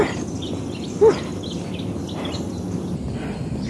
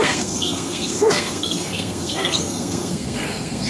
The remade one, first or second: second